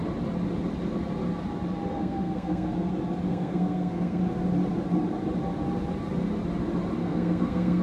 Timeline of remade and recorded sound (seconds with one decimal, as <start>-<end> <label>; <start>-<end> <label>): 0.0-1.9 recorded; 1.9-2.9 remade; 2.9-3.3 recorded; 3.3-4.2 remade; 4.2-7.0 recorded; 7.0-7.8 remade

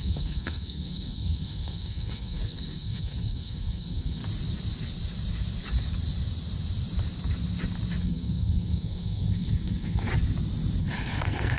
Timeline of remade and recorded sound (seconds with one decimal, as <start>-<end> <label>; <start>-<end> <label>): 0.0-4.2 remade; 4.2-8.0 recorded; 8.0-10.1 remade; 10.1-10.8 recorded; 10.8-11.6 remade

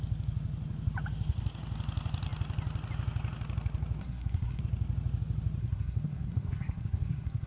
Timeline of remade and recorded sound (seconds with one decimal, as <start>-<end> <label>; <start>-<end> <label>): 0.0-4.0 recorded; 4.0-4.6 remade; 4.6-5.6 recorded; 5.6-7.5 remade